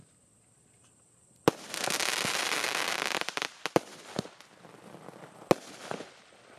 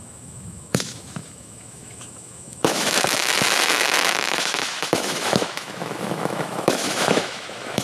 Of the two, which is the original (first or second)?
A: first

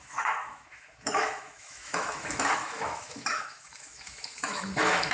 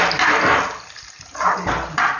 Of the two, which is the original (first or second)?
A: second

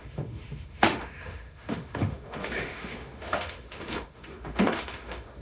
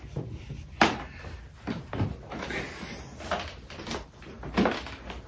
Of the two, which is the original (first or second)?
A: second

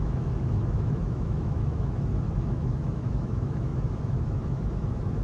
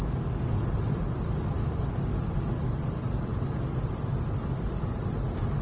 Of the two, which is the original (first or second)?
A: second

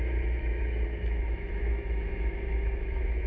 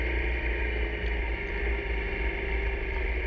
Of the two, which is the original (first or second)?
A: second